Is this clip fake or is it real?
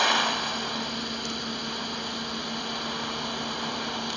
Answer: real